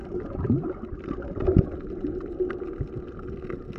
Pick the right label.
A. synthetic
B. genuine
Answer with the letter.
B